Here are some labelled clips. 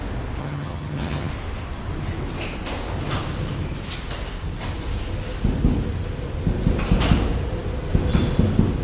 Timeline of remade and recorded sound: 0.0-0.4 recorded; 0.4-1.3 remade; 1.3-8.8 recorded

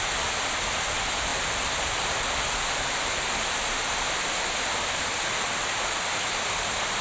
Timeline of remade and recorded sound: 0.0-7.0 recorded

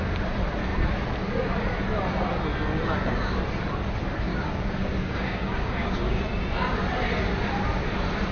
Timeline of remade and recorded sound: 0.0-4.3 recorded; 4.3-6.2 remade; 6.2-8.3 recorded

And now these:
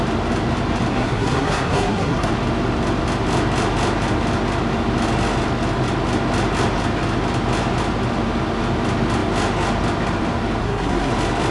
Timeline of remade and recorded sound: 0.0-0.9 recorded; 0.9-2.3 remade; 2.3-10.6 recorded; 10.6-11.1 remade; 11.1-11.5 recorded

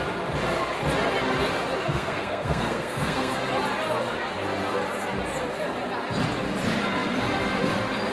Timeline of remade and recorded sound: 0.0-1.9 recorded; 1.9-3.4 remade; 3.4-8.1 recorded

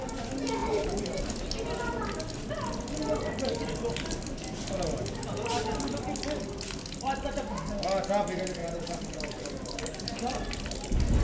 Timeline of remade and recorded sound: 0.0-0.6 recorded; 0.6-1.2 remade; 1.2-8.6 recorded; 8.6-10.3 remade; 10.3-11.2 recorded

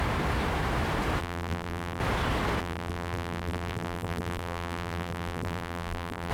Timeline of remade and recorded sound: 0.0-1.2 recorded; 1.2-2.0 remade; 2.0-2.6 recorded; 2.6-6.3 remade